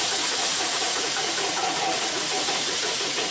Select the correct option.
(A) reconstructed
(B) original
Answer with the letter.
A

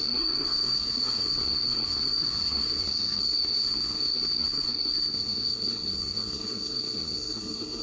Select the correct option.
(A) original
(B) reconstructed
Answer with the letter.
B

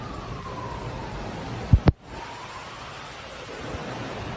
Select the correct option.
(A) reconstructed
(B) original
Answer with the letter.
B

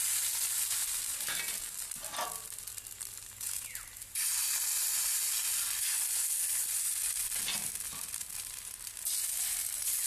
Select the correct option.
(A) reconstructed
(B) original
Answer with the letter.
B